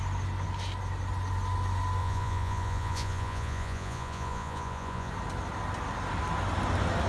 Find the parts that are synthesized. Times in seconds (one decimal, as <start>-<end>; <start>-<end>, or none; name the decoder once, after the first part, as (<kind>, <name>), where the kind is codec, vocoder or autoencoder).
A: 2.0-5.1 (vocoder, Vocos)